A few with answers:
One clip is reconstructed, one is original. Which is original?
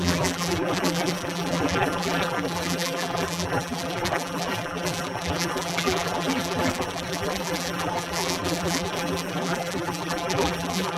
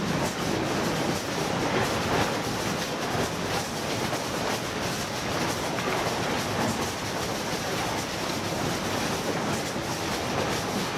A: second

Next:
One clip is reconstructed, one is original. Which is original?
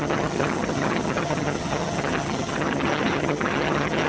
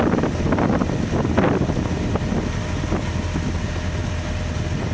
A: second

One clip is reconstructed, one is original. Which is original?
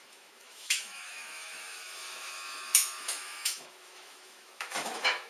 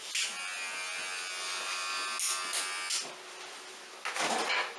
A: second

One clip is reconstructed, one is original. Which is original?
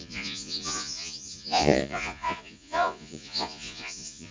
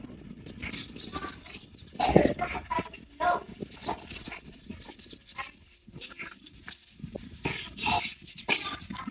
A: second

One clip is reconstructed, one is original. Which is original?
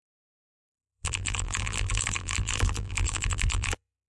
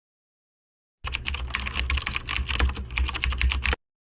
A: second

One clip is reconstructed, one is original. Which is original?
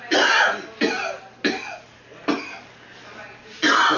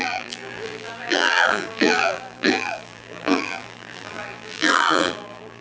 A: first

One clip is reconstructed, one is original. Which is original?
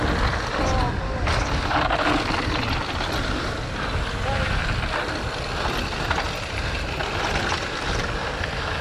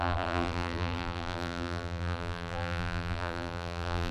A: first